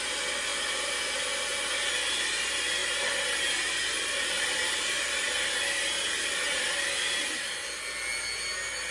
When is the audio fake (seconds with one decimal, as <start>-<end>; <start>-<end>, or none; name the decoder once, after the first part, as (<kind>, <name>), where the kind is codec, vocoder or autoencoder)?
none